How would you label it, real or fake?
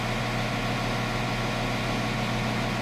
real